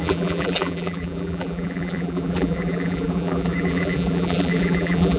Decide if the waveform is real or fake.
fake